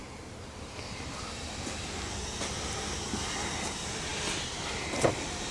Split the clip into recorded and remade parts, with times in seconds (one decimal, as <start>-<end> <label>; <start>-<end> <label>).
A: 0.0-5.5 recorded